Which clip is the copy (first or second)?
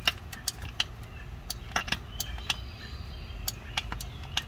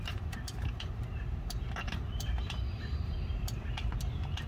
second